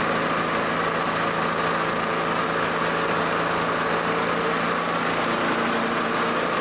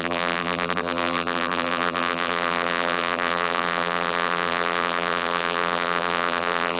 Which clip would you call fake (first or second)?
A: second